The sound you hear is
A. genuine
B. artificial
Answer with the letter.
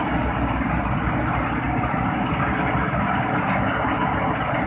A